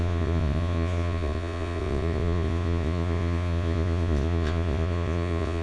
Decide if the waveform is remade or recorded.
remade